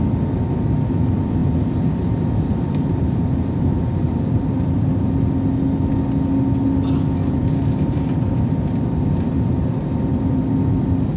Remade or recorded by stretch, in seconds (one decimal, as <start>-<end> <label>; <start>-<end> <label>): 0.0-1.4 recorded; 1.4-5.0 remade; 5.0-7.2 recorded; 7.2-10.4 remade; 10.4-11.2 recorded